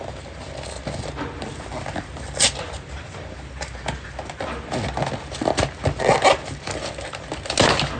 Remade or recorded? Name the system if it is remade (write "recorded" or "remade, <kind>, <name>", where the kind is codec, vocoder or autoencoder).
recorded